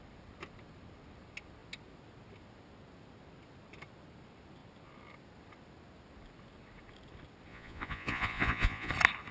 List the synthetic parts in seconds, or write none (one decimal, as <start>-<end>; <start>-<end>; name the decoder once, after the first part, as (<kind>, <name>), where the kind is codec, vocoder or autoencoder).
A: 7.5-8.9 (vocoder, Vocos)